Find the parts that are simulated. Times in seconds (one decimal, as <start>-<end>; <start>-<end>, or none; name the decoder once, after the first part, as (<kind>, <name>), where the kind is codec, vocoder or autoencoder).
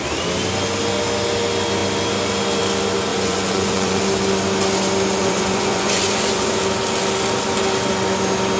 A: 3.1-4.0 (vocoder, Vocos); 5.2-6.6